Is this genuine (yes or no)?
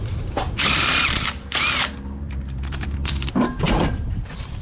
no